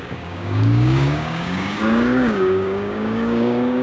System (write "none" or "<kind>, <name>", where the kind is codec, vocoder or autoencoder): codec, DAC